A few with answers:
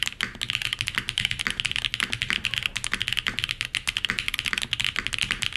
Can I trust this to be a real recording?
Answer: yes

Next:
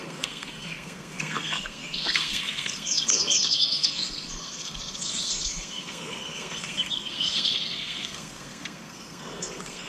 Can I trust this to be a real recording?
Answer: no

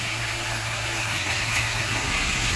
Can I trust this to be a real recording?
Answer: no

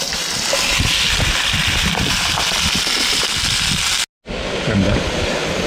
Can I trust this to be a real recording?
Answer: yes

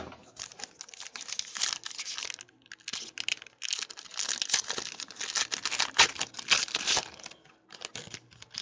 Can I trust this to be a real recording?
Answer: yes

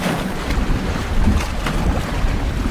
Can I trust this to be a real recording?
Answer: yes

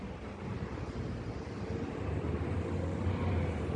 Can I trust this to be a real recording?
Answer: yes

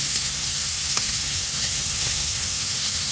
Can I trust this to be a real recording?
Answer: no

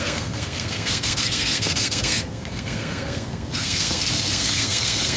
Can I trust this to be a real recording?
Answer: no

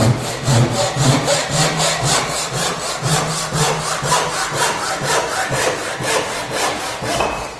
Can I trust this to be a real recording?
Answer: yes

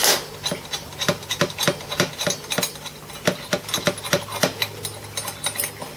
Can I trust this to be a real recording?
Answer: yes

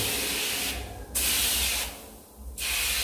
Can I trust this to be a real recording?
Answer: yes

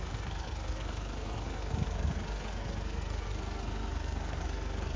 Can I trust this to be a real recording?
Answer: no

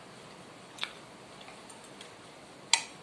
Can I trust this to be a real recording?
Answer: yes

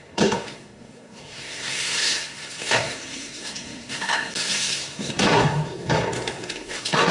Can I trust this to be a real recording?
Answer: no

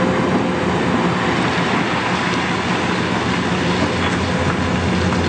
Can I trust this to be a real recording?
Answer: yes